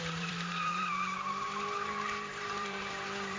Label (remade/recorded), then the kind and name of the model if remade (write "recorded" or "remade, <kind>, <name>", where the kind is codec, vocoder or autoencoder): remade, vocoder, BigVGAN v2